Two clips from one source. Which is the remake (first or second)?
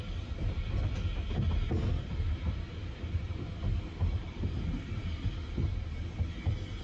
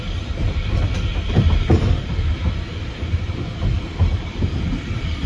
second